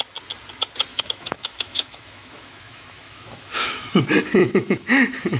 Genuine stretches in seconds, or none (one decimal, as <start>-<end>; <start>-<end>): 0.0-0.9; 4.0-4.4